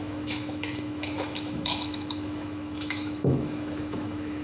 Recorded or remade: remade